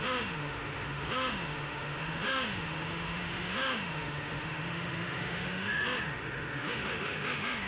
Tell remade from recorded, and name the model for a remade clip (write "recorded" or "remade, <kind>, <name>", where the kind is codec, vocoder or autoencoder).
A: remade, autoencoder, DAC-VAE